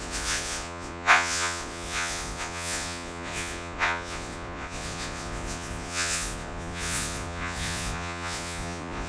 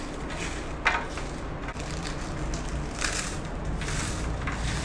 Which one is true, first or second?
second